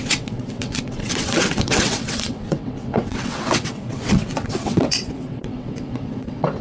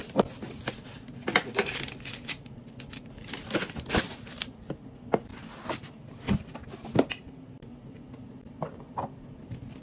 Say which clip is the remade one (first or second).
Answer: first